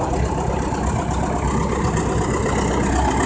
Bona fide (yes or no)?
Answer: yes